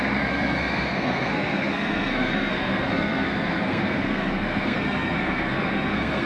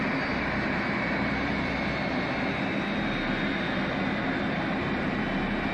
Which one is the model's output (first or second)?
first